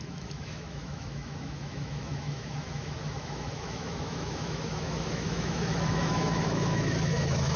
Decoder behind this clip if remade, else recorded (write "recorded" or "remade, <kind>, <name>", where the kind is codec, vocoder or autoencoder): remade, autoencoder, DAC-VAE